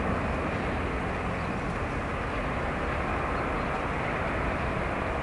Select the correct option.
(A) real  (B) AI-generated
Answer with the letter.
A